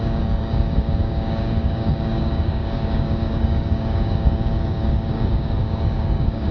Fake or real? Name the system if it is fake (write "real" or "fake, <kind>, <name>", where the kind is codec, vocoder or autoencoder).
fake, codec, DAC